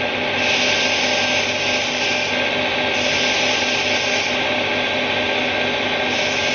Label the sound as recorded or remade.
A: recorded